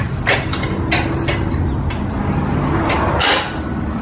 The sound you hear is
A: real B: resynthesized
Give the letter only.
A